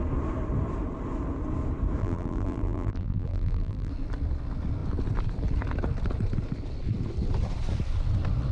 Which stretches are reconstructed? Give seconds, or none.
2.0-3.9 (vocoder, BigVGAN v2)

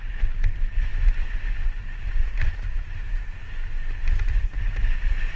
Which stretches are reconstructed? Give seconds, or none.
none